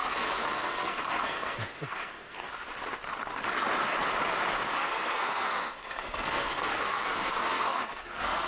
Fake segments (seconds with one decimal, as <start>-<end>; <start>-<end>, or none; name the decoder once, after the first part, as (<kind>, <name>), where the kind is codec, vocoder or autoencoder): 0.0-2.5 (codec, SNAC); 4.8-8.5